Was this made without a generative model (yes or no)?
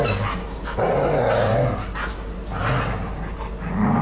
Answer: yes